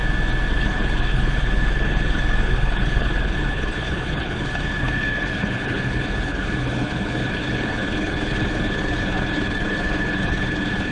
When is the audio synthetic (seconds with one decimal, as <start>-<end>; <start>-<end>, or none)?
0.5-10.9